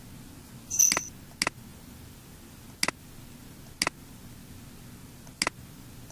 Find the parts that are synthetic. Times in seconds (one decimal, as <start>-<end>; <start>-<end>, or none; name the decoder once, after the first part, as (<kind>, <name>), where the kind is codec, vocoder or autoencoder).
none